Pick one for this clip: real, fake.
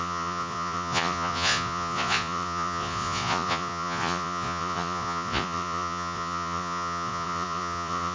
fake